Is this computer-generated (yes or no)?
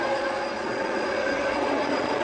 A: yes